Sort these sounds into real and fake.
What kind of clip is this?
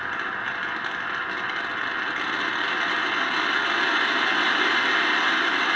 real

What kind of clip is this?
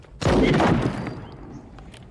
real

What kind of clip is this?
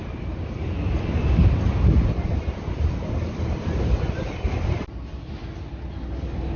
fake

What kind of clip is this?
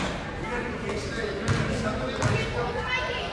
real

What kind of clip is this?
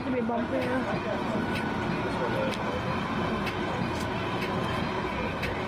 real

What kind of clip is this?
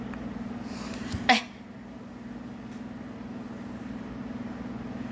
real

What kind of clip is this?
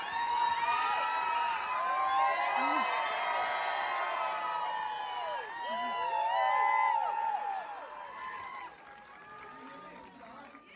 real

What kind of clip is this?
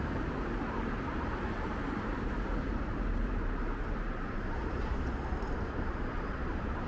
fake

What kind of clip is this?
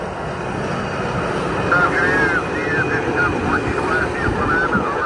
real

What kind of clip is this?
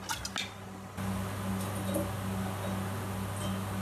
real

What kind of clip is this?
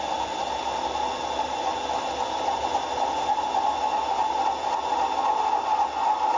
real